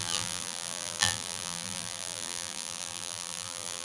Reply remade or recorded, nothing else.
remade